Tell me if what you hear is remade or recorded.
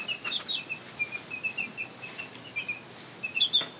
recorded